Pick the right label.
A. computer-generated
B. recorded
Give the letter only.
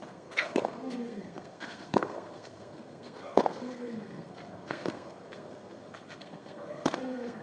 A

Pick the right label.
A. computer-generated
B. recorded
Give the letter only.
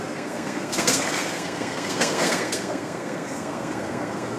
A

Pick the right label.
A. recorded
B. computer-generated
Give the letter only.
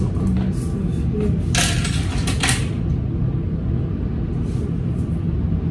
A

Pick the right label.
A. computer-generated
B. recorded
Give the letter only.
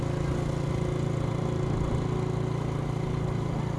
B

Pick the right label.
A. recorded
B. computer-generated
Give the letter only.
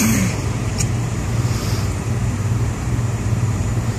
B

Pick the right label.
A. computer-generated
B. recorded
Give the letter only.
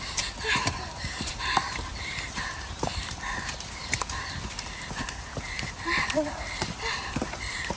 A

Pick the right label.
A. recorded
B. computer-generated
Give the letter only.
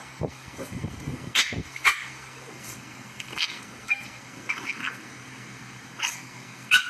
B